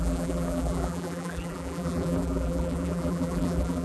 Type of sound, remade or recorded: remade